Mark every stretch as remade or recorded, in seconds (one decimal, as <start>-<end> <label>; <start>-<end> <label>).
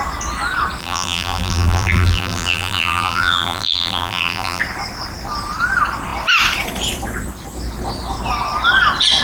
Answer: 0.0-0.8 recorded; 0.8-4.6 remade; 4.6-9.2 recorded